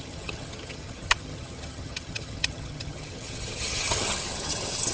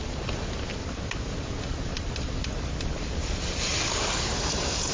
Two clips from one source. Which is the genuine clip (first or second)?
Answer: second